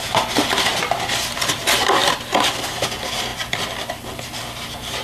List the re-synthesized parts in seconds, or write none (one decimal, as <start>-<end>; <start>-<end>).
0.7-1.6; 2.0-2.8; 3.3-4.4